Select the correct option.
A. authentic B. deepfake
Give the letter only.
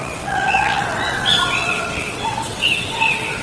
B